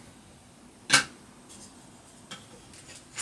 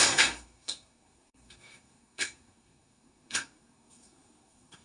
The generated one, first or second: second